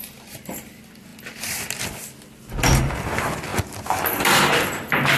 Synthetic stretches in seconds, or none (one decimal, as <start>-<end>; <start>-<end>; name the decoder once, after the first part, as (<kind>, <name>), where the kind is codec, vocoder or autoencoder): none

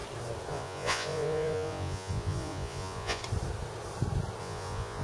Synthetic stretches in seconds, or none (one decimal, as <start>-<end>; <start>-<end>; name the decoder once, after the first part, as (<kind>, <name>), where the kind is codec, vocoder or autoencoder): 0.5-3.2 (vocoder, Vocos); 4.4-5.0

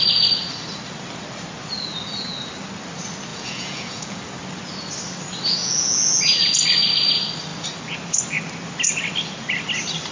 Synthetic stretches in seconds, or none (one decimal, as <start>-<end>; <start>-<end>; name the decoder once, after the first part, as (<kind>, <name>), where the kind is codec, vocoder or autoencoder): 3.3-4.2 (vocoder, Vocos); 5.6-6.2